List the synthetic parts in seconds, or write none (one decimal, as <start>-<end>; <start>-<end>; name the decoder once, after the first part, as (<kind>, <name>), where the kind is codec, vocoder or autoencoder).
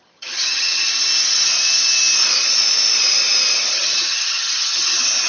0.0-0.9 (vocoder, HiFi-GAN); 3.7-5.3